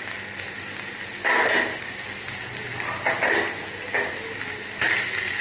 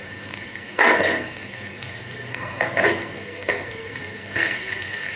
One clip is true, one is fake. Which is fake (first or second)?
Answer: second